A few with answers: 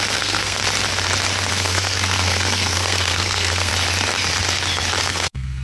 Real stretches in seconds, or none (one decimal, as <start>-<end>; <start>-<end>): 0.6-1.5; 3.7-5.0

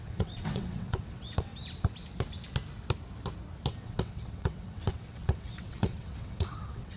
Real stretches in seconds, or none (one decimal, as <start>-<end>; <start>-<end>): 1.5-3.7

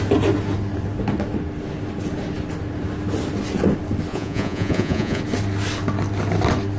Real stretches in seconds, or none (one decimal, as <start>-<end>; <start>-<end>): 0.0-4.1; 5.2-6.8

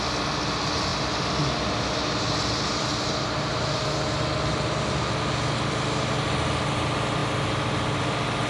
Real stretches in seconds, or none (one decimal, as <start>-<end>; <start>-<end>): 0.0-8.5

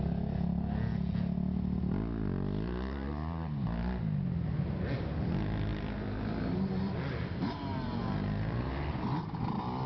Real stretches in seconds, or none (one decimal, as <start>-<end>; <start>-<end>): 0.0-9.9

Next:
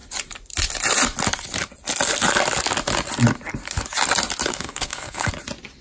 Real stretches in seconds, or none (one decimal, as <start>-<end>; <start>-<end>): 0.0-4.5; 5.3-5.8